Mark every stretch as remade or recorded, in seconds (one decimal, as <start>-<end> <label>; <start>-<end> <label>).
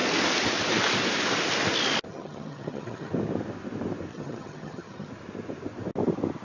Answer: 0.0-2.1 recorded; 2.1-3.1 remade; 3.1-4.1 recorded; 4.1-5.1 remade; 5.1-6.4 recorded